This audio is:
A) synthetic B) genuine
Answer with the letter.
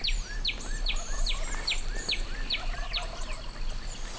B